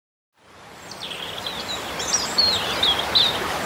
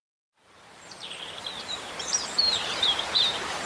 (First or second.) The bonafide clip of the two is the first